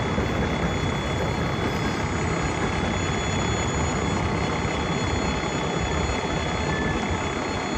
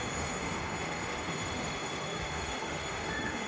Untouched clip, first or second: first